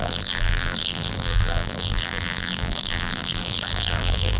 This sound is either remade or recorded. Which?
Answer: remade